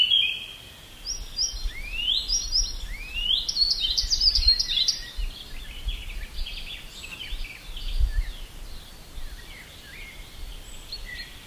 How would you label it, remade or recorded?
recorded